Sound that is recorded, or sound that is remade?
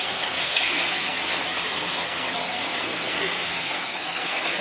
remade